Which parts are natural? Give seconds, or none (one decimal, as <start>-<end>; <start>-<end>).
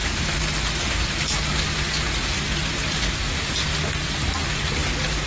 0.0-5.3